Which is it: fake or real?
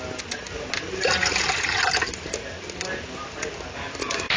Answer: real